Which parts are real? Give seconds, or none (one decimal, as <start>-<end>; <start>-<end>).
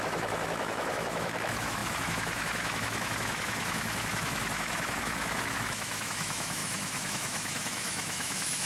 none